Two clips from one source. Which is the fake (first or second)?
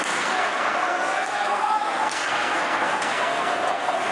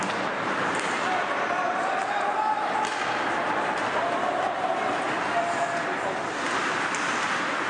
first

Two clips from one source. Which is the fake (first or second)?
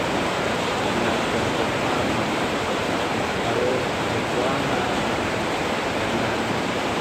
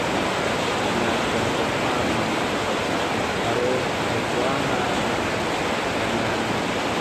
first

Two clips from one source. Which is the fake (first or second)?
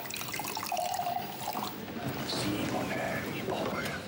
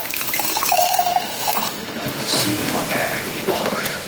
second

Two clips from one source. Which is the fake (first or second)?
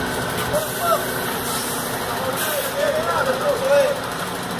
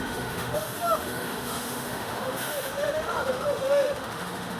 second